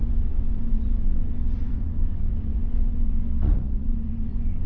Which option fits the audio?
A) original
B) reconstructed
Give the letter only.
B